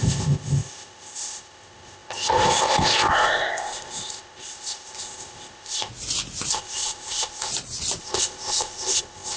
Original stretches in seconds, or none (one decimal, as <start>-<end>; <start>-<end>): 5.9-6.5; 7.5-8.0